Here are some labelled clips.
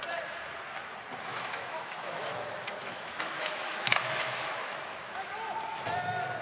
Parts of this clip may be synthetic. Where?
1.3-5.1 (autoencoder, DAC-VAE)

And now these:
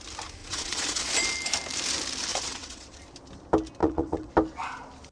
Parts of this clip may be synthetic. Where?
0.4-1.1 (vocoder, WaveNeXt); 2.3-3.0; 3.8-4.3